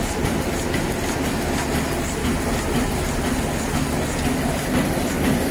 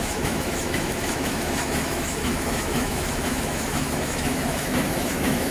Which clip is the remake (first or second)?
second